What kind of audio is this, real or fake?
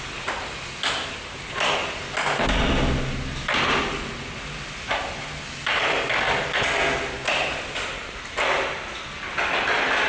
real